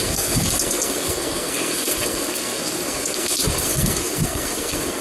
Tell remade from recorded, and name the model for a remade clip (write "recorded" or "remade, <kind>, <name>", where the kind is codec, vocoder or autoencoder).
remade, codec, SNAC